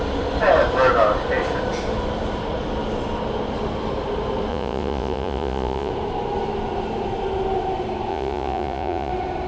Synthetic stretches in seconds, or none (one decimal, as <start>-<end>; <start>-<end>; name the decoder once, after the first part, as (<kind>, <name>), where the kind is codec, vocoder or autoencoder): 4.5-5.9 (vocoder, Vocos); 8.1-9.1